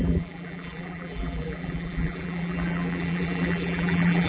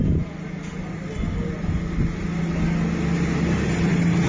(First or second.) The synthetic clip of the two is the first